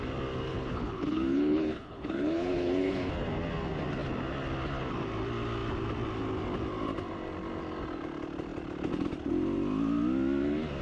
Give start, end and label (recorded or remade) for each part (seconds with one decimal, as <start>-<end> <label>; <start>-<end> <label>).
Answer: 0.0-0.5 recorded; 0.5-3.1 remade; 3.1-10.8 recorded